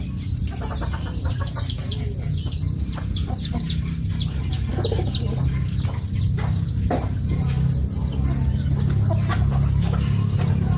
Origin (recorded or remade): recorded